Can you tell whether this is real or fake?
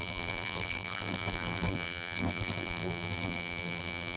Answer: fake